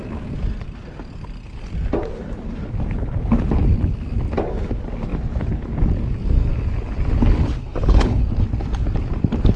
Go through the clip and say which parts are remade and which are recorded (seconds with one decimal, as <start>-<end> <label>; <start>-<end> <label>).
0.0-7.6 recorded; 7.6-8.2 remade; 8.2-9.6 recorded